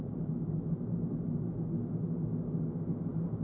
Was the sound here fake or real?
real